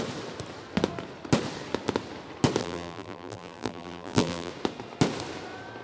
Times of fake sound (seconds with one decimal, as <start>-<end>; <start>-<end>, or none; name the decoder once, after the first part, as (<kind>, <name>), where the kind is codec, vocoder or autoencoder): 2.6-4.5 (vocoder, BigVGAN v2)